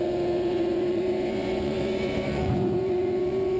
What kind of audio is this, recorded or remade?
remade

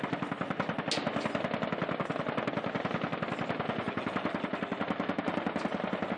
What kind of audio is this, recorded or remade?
recorded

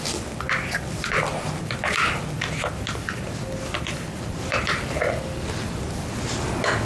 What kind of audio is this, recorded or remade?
recorded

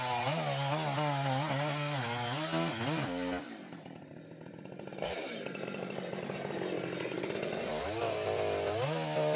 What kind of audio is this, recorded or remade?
recorded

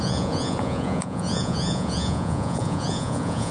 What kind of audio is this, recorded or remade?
remade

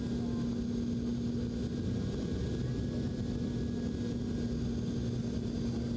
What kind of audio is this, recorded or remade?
recorded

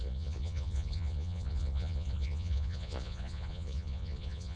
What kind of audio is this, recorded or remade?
remade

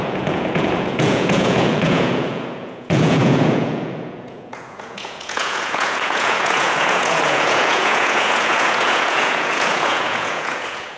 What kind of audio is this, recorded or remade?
remade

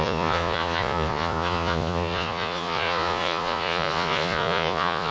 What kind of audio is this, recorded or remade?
remade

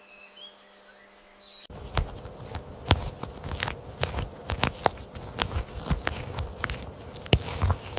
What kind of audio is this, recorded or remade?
recorded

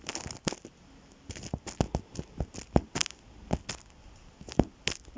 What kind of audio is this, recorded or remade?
recorded